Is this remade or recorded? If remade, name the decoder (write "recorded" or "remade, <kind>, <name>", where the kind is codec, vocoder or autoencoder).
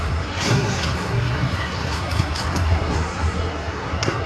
remade, codec, SNAC